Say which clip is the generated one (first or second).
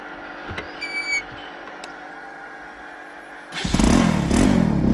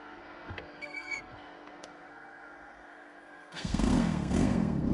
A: second